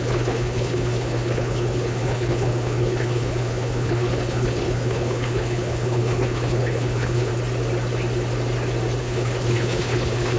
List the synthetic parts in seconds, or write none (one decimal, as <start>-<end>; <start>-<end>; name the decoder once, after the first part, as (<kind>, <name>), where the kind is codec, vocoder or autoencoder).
0.0-7.3 (codec, HILCodec); 9.0-10.4